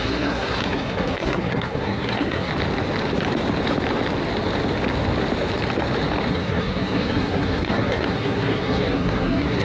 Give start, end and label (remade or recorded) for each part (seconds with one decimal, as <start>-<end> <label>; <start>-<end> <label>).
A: 0.0-2.5 remade; 2.5-6.3 recorded; 6.3-9.6 remade